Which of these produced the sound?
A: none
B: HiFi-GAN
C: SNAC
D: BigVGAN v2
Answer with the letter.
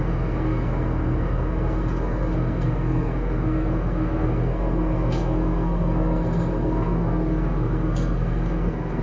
C